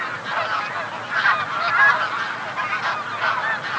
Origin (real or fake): real